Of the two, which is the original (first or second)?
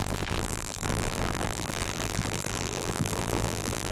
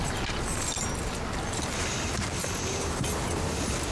second